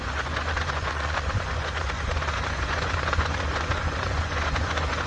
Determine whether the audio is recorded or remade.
remade